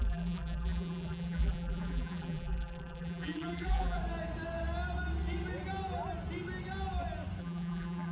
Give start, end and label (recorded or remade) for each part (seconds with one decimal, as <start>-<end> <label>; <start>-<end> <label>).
0.0-4.0 remade; 4.0-7.4 recorded; 7.4-8.1 remade